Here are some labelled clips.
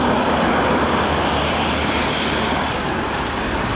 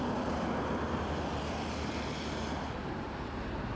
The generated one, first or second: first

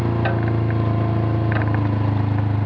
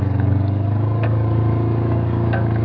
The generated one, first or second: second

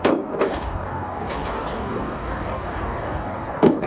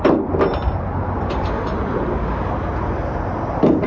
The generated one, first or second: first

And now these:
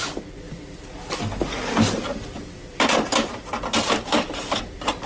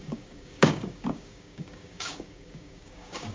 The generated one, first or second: second